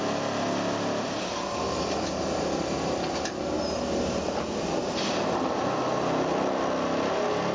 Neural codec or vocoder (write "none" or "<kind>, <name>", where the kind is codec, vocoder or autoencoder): none